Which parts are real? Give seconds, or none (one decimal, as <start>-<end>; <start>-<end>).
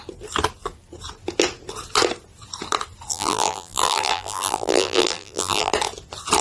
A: 0.0-3.1; 5.7-6.4